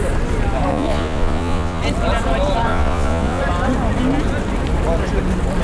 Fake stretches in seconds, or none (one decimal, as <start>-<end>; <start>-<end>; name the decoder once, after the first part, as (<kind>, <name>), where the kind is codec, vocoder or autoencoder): 0.7-1.8 (vocoder, Vocos); 2.7-3.4